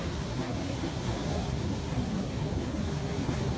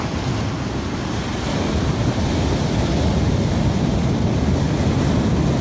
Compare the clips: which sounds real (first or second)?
second